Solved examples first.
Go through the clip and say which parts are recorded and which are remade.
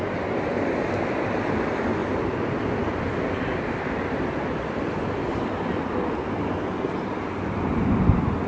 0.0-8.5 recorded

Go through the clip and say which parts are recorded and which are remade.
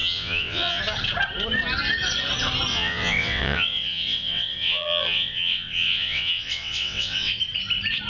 0.0-0.8 remade; 0.8-2.7 recorded; 2.7-7.4 remade; 7.4-8.1 recorded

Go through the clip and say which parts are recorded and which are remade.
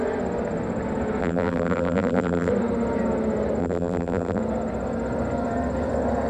0.0-1.2 recorded; 1.2-2.5 remade; 2.5-3.6 recorded; 3.6-4.4 remade; 4.4-6.3 recorded